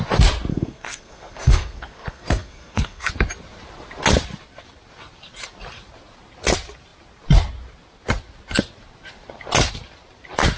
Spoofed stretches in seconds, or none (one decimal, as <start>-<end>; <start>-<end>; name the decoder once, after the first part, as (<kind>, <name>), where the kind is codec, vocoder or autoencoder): 0.5-3.1 (codec, SNAC)